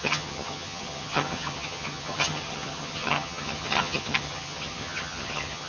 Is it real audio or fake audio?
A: fake